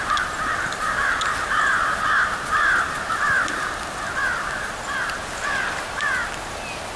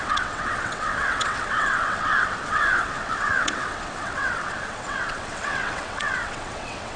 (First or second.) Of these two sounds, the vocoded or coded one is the second